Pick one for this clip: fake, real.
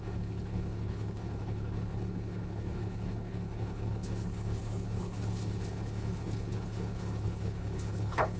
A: fake